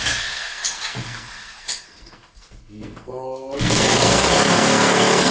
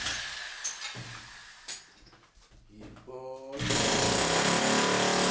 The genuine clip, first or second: second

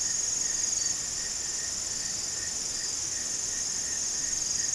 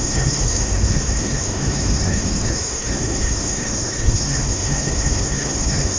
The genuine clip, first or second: first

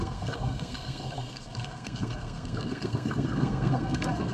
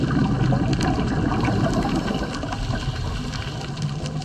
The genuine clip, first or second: second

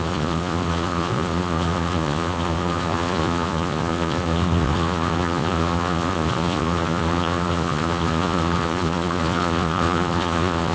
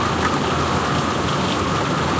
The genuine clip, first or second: second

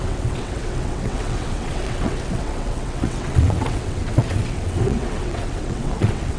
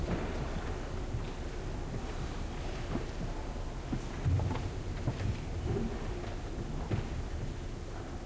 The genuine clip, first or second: second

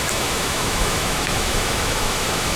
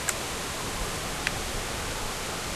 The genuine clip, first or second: second